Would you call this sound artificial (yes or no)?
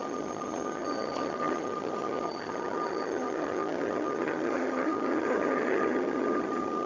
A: yes